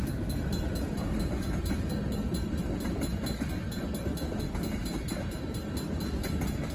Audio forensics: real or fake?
real